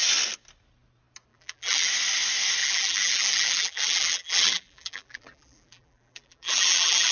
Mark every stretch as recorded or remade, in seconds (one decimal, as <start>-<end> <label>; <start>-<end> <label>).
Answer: 0.0-1.3 recorded; 1.3-1.9 remade; 1.9-2.6 recorded; 2.6-7.1 remade